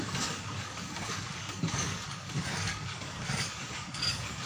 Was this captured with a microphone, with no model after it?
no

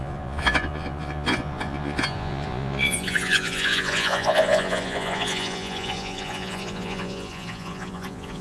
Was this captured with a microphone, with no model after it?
no